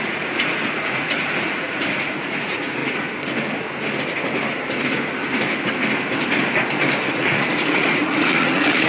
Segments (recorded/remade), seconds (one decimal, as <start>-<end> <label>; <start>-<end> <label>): 0.0-2.8 remade; 2.8-7.1 recorded; 7.1-8.9 remade